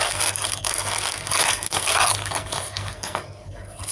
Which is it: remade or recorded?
remade